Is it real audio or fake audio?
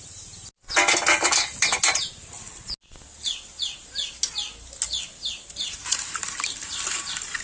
real